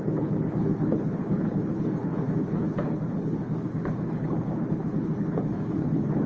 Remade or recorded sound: remade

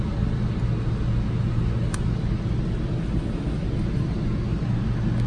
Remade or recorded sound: recorded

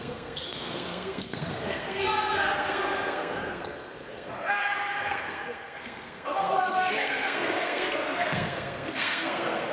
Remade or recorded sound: remade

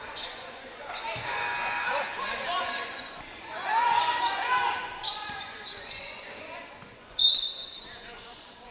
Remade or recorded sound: remade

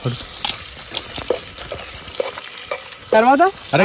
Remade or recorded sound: recorded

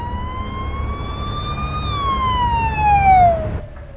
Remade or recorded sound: recorded